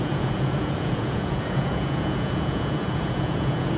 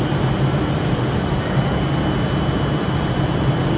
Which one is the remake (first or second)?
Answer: first